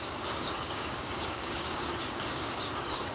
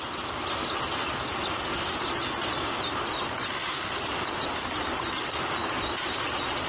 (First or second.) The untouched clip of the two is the second